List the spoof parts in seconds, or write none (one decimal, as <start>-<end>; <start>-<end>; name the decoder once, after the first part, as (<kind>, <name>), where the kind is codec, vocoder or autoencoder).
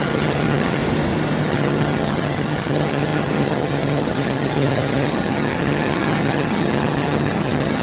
0.0-0.8 (vocoder, HiFi-GAN); 1.4-7.8